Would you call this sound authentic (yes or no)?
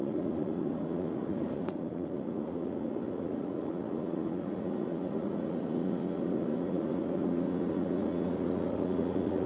no